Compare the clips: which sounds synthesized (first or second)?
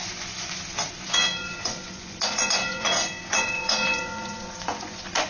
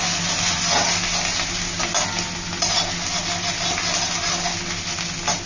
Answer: first